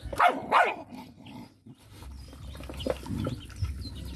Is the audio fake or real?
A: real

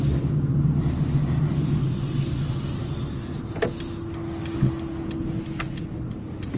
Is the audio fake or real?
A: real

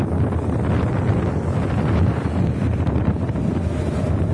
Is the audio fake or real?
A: real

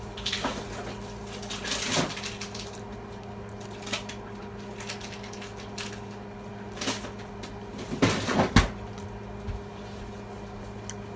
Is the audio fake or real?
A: real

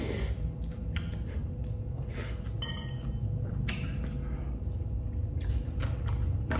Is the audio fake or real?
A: real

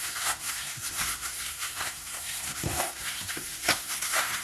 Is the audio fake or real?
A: fake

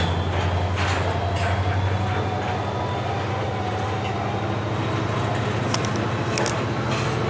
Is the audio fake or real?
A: real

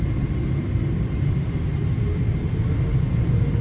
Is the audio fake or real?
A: real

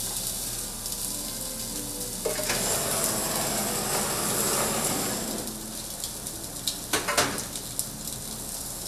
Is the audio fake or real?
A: real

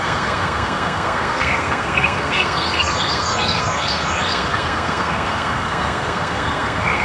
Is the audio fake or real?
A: fake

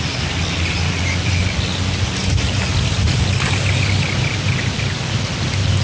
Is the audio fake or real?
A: real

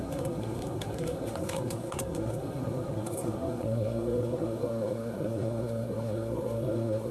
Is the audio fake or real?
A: fake